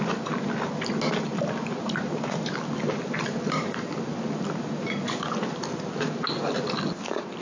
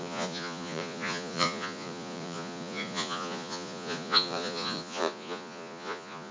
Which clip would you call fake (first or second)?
second